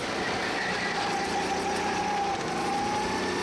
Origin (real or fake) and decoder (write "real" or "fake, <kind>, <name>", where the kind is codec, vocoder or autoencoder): real